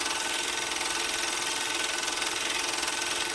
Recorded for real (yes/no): yes